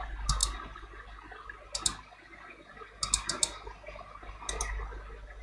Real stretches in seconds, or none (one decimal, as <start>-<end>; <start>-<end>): 0.0-5.4